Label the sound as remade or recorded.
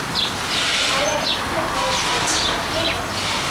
recorded